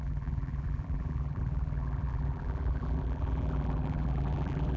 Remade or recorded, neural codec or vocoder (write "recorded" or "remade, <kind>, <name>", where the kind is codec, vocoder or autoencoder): remade, vocoder, BigVGAN v2